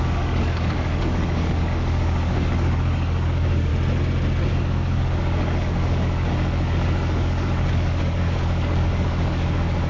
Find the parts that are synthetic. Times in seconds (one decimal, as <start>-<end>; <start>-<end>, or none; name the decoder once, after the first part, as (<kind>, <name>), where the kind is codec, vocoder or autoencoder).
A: 0.0-3.7 (codec, DAC); 4.5-9.9